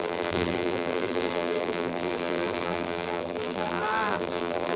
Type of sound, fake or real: fake